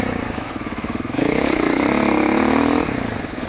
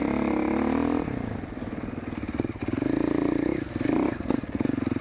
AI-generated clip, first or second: first